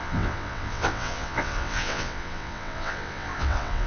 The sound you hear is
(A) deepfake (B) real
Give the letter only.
A